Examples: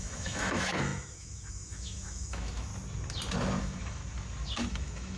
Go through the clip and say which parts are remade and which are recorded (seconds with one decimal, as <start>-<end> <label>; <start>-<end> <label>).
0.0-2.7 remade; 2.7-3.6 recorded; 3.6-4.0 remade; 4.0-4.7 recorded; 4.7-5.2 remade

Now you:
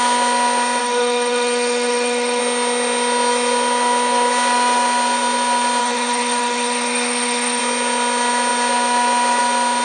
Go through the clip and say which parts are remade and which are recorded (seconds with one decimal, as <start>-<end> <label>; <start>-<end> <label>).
0.0-0.8 recorded; 0.8-2.4 remade; 2.4-5.8 recorded; 5.8-7.6 remade; 7.6-9.8 recorded

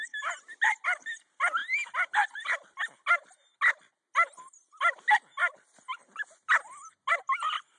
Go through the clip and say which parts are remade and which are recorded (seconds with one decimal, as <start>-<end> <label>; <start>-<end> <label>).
0.0-7.8 recorded